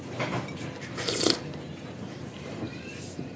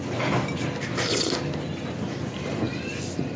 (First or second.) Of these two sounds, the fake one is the first